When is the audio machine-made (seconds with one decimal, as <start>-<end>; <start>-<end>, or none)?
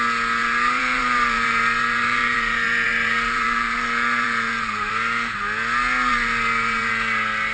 0.4-4.9; 6.1-6.9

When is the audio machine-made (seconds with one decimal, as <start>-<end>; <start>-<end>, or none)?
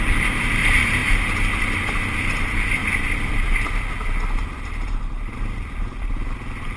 0.0-6.8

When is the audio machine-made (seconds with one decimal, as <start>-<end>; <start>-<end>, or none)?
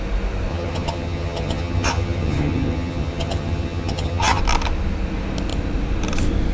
0.5-4.4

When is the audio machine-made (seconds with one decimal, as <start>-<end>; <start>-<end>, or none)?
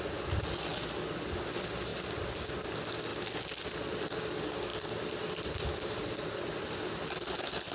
none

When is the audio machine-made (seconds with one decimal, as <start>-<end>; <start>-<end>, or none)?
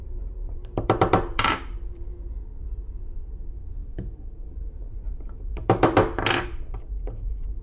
0.0-7.6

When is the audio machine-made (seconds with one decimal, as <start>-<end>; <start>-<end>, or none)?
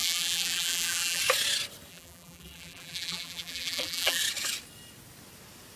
0.0-1.2; 1.9-4.2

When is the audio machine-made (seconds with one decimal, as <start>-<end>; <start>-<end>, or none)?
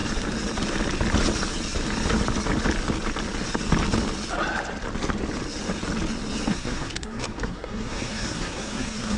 6.5-9.2